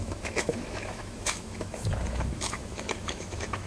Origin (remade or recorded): remade